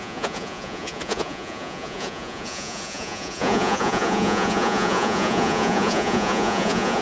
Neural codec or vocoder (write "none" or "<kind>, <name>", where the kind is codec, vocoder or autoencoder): vocoder, Vocos